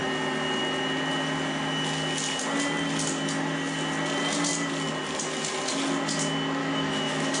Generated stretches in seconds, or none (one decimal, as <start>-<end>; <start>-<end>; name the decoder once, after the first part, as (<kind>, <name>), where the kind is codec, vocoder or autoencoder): 6.6-7.4 (autoencoder, DAC-VAE)